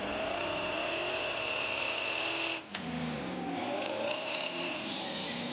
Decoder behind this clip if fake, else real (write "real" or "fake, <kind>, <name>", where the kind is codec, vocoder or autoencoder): real